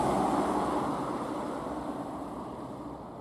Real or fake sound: real